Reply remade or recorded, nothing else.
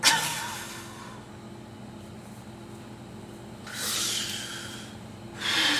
recorded